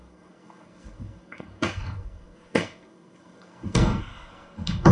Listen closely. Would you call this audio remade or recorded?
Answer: remade